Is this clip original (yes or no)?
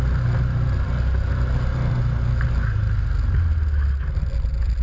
yes